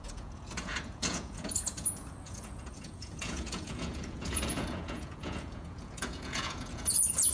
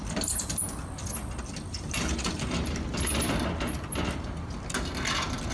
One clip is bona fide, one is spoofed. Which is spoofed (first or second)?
first